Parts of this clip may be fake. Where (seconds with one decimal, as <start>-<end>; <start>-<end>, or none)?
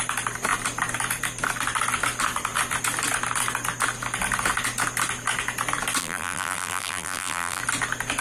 6.0-7.6